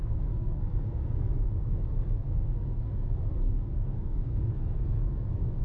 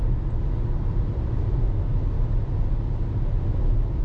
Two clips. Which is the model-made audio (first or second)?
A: first